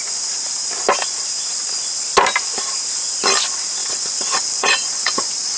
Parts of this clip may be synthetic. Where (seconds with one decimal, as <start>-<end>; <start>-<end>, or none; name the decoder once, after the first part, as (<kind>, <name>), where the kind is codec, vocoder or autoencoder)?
3.8-5.6 (vocoder, WaveNeXt)